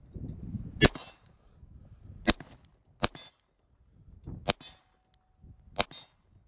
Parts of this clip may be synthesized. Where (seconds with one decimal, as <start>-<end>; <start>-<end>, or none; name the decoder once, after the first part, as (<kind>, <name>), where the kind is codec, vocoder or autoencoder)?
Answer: none